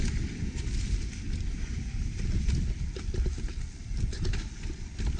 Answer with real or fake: real